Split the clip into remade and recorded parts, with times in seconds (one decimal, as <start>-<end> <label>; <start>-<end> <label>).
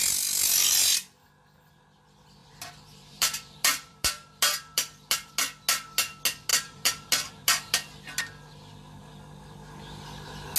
0.0-2.4 recorded; 2.4-5.3 remade; 5.3-6.5 recorded; 6.5-8.2 remade; 8.2-10.6 recorded